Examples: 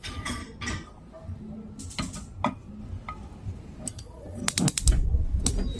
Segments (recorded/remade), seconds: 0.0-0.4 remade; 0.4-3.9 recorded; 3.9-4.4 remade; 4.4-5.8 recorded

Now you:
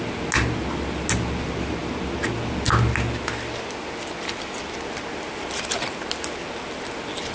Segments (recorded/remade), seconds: 0.0-7.3 recorded